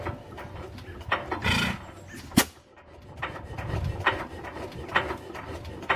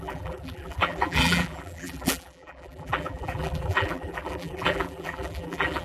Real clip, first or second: first